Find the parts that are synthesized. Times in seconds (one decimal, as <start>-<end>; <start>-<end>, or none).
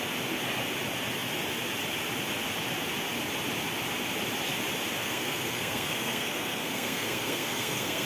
5.0-8.1